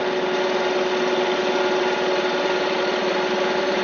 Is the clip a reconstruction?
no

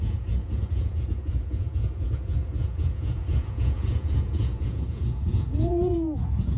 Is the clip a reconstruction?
yes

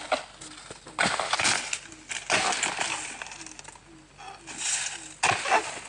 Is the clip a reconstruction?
no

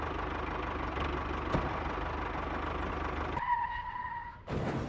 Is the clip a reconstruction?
no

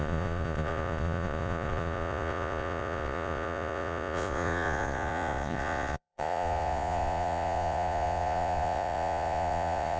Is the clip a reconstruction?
yes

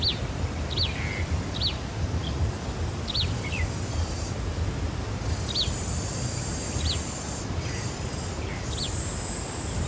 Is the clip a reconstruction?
no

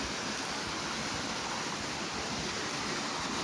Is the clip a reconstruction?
no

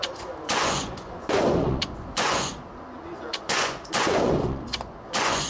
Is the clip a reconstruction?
yes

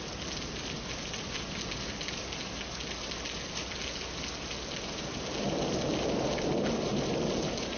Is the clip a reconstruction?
no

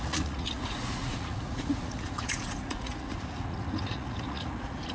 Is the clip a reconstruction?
yes